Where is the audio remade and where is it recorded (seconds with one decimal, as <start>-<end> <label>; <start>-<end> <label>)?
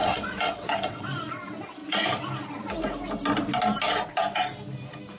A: 0.0-1.8 remade; 1.8-5.2 recorded